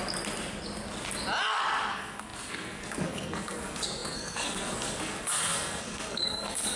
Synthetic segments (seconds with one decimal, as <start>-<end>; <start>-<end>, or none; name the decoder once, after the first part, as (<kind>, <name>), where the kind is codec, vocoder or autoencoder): 1.9-6.8 (codec, SNAC)